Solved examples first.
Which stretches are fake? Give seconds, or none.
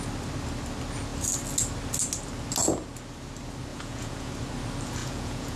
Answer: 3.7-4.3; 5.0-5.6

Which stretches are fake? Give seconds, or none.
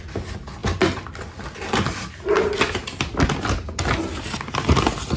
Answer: none